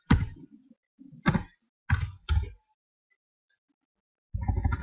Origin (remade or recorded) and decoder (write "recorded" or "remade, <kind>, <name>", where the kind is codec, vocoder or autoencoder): recorded